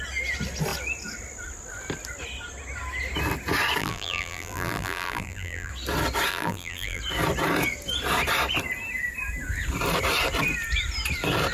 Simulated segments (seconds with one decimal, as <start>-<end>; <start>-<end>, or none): 3.8-5.7; 6.3-7.0